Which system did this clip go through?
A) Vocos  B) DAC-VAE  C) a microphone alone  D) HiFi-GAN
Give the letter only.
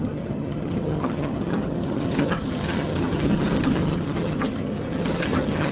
D